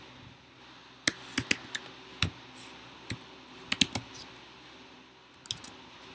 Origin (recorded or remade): recorded